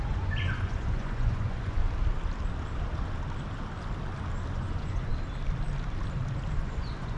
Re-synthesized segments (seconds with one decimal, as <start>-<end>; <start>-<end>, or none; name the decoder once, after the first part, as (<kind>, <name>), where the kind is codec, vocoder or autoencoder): 0.0-1.8 (vocoder, Vocos); 4.5-5.1; 6.6-7.2